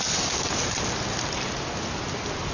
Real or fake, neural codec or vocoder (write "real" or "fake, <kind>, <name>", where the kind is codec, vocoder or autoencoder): real